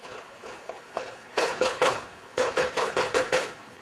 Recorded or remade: remade